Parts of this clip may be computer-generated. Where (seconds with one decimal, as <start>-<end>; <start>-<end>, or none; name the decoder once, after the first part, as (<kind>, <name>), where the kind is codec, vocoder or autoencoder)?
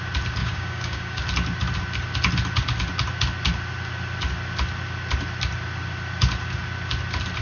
0.4-1.2 (codec, DAC)